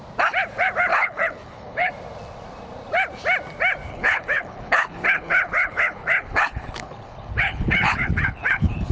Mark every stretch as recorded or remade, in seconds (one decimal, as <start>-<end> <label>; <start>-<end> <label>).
0.0-0.9 recorded; 0.9-1.9 remade; 1.9-3.9 recorded; 3.9-8.9 remade